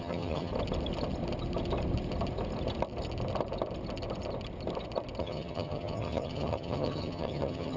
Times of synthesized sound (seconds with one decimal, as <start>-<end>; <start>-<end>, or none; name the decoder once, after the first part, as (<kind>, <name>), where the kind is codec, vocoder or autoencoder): 0.0-0.5 (vocoder, HiFi-GAN); 5.2-7.8